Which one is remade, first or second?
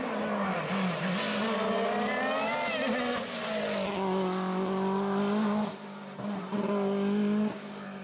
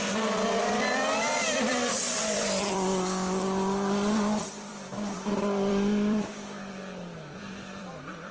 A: second